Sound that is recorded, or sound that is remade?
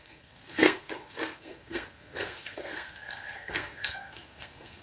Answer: remade